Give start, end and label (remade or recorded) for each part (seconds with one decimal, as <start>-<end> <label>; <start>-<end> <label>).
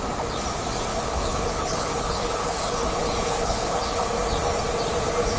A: 0.0-0.9 recorded; 0.9-4.1 remade; 4.1-5.4 recorded